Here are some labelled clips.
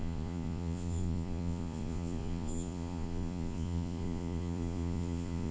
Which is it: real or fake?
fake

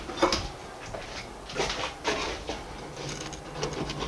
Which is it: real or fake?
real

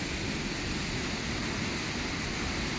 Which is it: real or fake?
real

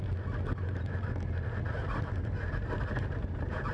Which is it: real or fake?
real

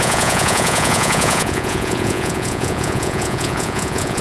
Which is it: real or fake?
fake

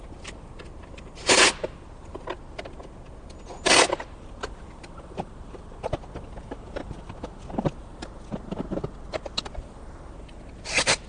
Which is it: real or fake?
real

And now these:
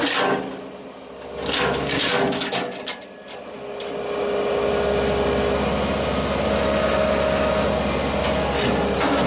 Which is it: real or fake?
real